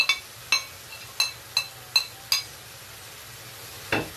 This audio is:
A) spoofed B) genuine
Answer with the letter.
B